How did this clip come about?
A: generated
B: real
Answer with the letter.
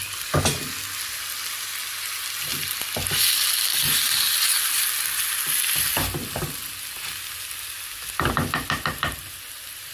B